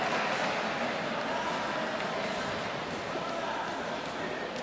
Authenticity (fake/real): real